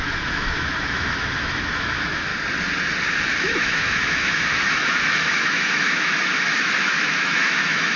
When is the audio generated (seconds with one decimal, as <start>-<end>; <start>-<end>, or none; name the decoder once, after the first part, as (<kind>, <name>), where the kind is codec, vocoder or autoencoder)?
0.0-2.3 (autoencoder, DAC-VAE); 3.4-8.0